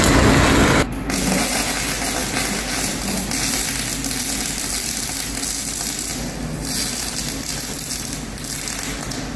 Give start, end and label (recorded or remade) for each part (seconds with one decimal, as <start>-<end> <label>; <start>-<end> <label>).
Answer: 0.0-9.4 recorded